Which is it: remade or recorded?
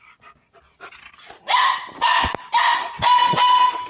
recorded